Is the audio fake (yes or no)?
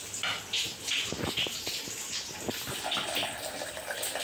no